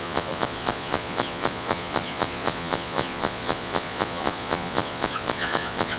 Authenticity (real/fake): fake